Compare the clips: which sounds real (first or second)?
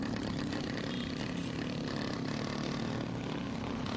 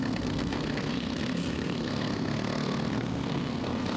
first